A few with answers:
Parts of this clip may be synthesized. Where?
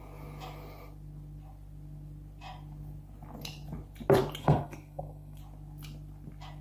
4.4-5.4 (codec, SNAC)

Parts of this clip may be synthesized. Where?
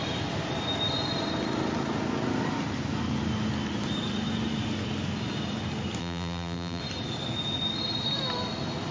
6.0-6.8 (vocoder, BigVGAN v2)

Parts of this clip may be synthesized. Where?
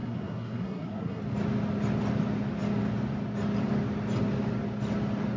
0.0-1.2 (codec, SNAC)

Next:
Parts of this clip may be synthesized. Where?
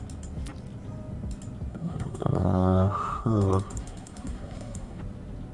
1.7-5.0 (codec, SNAC)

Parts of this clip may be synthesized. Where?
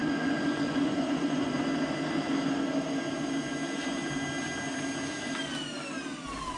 0.0-1.5 (vocoder, Vocos)